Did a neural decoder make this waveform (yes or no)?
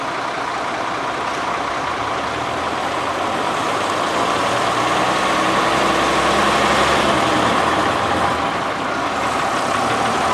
no